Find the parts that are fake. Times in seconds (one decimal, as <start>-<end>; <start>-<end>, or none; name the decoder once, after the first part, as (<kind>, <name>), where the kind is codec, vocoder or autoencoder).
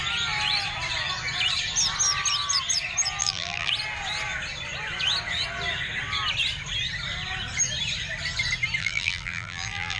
3.2-3.7 (vocoder, BigVGAN v2); 8.8-10.0